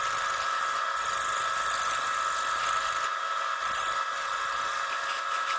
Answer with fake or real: real